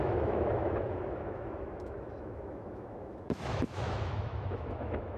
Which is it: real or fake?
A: fake